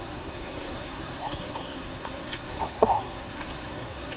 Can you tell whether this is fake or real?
fake